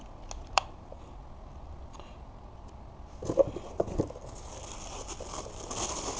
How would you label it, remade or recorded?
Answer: recorded